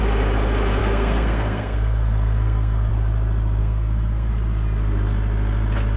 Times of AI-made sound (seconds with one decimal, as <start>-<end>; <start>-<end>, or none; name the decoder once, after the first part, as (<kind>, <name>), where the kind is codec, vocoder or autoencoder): 0.8-2.9 (codec, SNAC); 3.6-4.3